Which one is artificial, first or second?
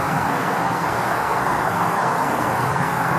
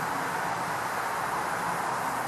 first